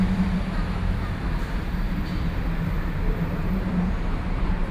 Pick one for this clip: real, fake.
fake